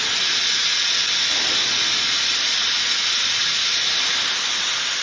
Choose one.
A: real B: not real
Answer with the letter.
A